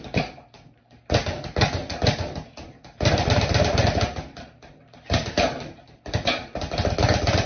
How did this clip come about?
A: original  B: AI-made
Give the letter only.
A